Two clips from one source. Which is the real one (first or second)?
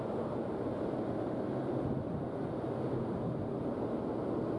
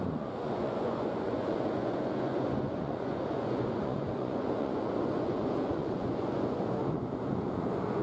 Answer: first